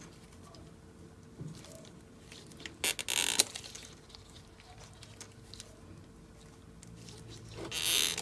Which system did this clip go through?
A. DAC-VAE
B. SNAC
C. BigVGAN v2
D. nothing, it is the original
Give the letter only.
D